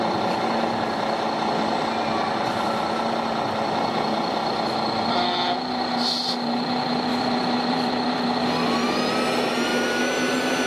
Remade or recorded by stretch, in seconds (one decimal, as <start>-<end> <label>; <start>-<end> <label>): 0.0-7.1 recorded; 7.1-8.2 remade; 8.2-10.7 recorded